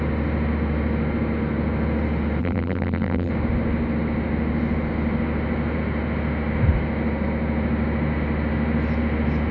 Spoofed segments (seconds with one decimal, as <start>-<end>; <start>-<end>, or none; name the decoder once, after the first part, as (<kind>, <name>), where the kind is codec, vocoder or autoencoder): 2.4-3.3 (vocoder, BigVGAN v2)